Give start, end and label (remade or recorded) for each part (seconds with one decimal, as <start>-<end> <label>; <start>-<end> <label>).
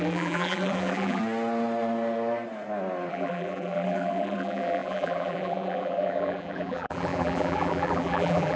0.0-1.2 remade; 1.2-3.1 recorded; 3.1-8.6 remade